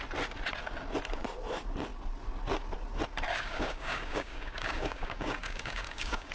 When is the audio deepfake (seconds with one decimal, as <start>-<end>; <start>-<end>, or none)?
3.3-6.3